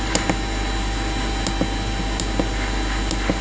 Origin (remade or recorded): recorded